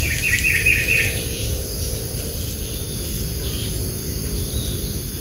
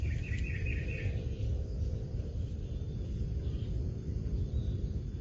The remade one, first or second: second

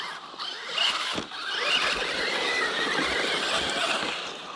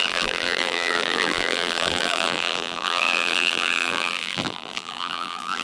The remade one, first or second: second